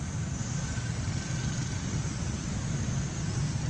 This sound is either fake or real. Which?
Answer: real